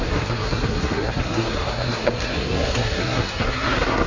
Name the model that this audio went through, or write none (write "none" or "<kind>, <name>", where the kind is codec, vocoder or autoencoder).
codec, SNAC